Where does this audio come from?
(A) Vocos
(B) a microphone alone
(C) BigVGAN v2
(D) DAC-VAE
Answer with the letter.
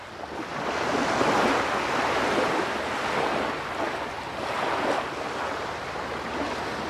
B